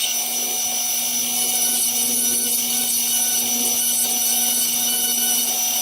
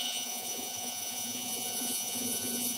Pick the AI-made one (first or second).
second